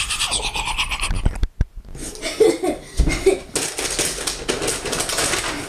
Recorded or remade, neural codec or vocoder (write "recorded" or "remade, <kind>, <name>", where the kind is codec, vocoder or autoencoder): recorded